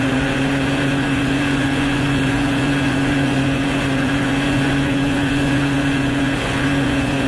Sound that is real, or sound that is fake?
fake